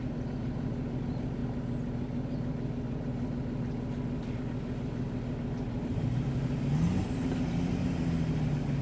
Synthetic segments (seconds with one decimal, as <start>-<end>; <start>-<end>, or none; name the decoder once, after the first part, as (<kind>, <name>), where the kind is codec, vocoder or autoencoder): none